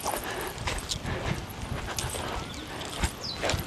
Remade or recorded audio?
recorded